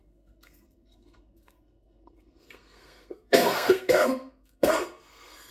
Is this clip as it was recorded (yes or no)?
no